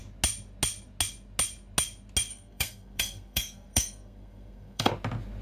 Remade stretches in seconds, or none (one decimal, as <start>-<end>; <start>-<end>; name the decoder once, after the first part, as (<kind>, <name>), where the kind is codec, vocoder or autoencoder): 2.3-4.9 (codec, SNAC)